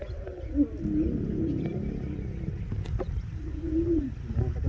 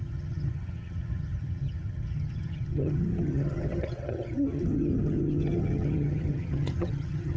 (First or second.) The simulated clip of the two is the second